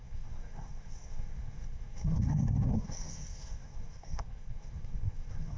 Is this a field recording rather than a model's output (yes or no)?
no